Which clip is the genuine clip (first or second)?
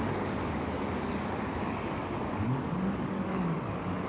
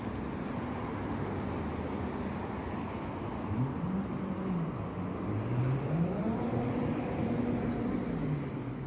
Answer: second